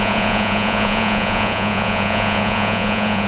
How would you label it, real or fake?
fake